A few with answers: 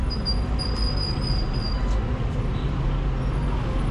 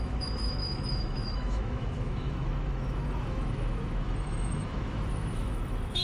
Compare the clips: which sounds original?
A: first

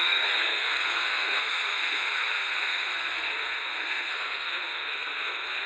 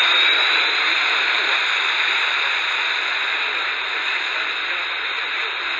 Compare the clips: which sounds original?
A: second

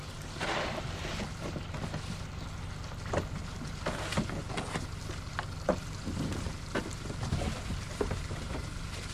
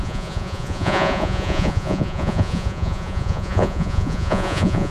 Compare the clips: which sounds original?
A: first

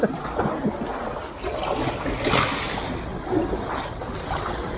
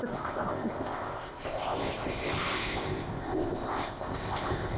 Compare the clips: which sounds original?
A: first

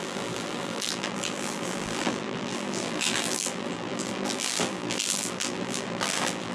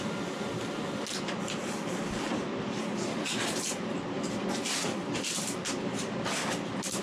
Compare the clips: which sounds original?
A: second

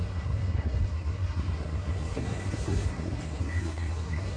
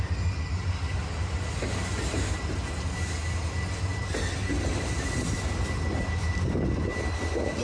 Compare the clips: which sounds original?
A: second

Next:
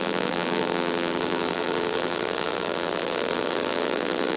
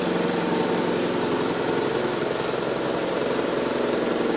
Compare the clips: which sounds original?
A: second